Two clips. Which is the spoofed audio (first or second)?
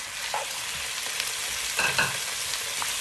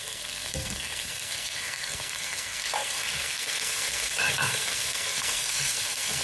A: second